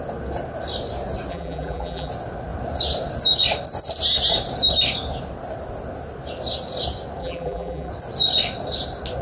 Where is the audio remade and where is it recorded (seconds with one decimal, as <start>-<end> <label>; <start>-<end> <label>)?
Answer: 0.0-1.3 recorded; 1.3-2.1 remade; 2.1-7.2 recorded; 7.2-7.9 remade; 7.9-9.2 recorded